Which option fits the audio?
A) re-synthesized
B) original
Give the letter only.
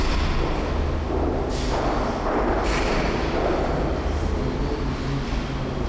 B